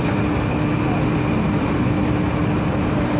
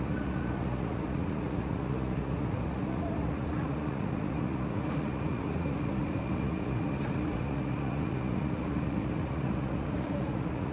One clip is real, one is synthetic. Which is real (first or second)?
first